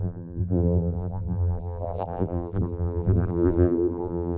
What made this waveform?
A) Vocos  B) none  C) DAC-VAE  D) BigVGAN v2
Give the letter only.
D